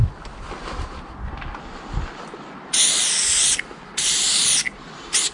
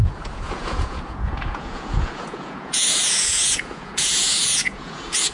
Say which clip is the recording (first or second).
first